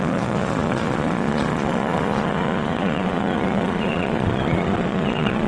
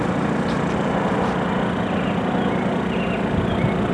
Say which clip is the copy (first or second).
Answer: first